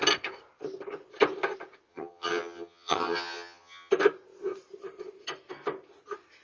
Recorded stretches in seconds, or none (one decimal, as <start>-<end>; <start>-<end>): 0.0-1.9; 3.9-6.4